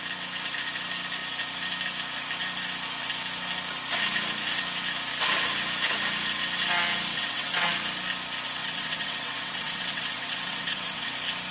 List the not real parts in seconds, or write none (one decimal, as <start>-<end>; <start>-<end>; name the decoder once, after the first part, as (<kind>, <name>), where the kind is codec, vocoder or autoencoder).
7.1-7.7 (vocoder, WaveNeXt); 8.6-11.1